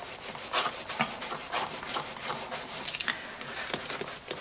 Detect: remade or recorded recorded